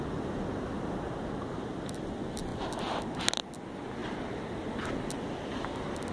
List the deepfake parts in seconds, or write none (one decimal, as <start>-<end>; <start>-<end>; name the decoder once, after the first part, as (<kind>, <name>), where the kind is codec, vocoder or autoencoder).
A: 4.0-4.7 (vocoder, BigVGAN v2)